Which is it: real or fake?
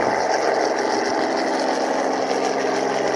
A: real